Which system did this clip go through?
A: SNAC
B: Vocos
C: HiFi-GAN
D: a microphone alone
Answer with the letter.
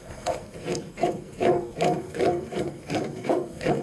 A